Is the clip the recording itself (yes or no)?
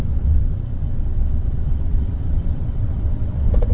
no